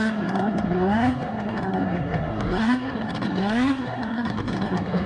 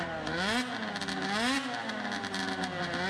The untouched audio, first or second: second